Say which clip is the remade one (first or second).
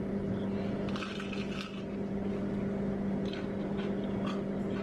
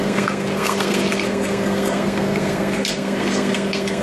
second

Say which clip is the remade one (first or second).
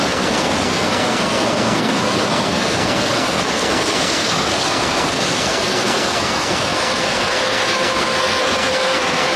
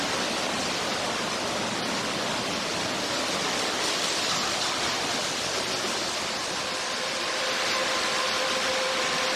first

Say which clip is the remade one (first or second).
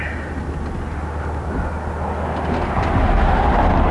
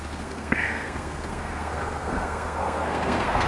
second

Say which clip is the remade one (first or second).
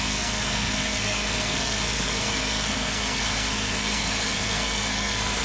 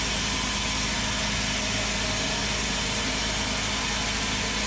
first